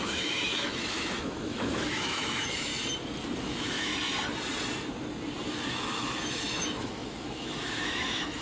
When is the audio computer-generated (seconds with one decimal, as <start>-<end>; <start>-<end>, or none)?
0.0-2.7; 3.4-3.9; 5.7-8.4